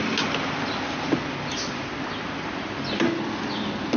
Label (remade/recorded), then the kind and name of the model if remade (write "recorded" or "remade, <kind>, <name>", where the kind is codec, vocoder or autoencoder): recorded